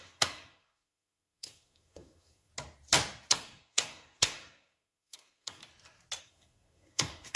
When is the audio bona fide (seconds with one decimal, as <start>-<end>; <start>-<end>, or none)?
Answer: 2.5-3.3; 5.6-6.2